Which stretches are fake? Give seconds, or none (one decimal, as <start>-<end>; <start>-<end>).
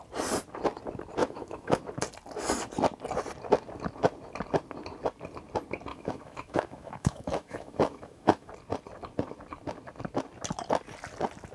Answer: 1.2-1.8; 5.9-8.5